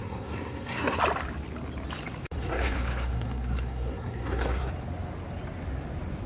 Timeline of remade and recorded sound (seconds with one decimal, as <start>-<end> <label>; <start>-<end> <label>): 0.0-1.0 remade; 1.0-2.2 recorded; 2.2-4.7 remade; 4.7-6.3 recorded